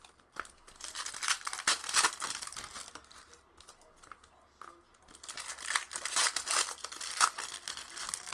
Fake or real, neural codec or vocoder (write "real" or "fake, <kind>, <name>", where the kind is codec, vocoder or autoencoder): real